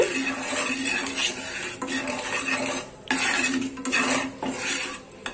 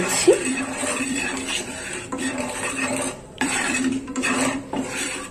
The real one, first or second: first